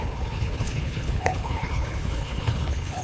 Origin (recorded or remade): remade